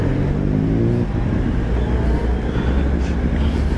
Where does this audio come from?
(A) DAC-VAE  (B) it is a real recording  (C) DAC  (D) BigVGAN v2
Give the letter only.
B